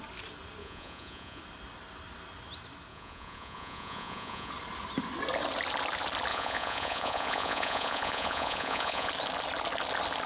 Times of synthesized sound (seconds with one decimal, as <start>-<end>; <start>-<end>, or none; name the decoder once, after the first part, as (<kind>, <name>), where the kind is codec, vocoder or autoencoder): 0.6-1.4 (vocoder, Vocos); 2.9-4.5; 6.3-9.1